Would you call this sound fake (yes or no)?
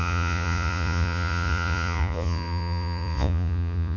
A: yes